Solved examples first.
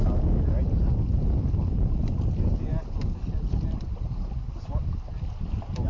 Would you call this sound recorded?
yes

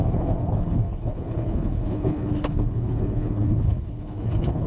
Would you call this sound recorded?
no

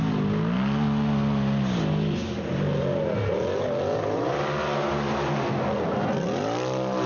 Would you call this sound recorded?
yes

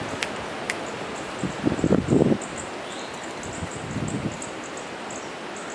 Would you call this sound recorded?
yes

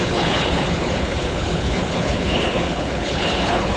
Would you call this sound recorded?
no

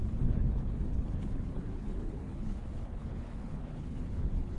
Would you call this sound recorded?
no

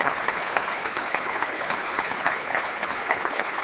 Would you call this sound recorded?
no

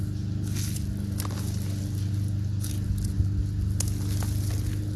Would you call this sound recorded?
yes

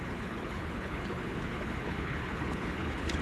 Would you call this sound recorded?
no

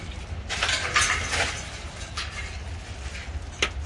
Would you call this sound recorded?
yes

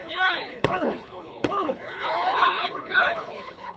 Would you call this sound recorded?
no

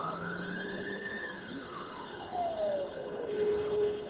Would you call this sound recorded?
no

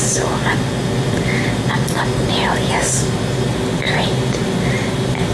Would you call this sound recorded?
yes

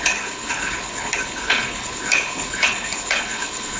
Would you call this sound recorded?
no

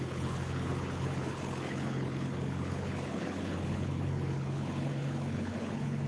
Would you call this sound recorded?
no